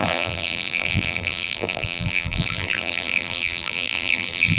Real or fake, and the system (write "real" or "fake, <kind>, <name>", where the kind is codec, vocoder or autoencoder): fake, vocoder, BigVGAN v2